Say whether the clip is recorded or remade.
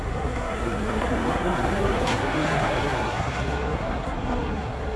remade